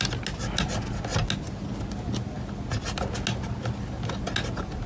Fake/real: real